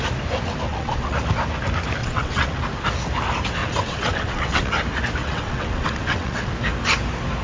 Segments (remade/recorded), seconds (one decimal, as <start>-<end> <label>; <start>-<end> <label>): 0.0-0.7 recorded; 0.7-1.2 remade; 1.2-2.0 recorded; 2.0-2.6 remade; 2.6-3.6 recorded; 3.6-4.7 remade; 4.7-5.2 recorded; 5.2-6.5 remade; 6.5-7.4 recorded